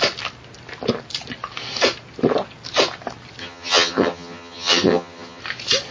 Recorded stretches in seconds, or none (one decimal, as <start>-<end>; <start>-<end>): 0.0-3.4; 5.4-5.9